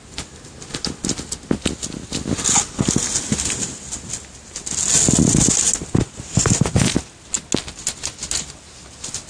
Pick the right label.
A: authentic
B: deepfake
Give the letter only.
A